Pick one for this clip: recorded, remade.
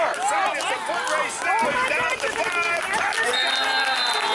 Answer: recorded